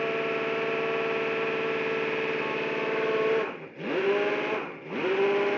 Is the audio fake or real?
real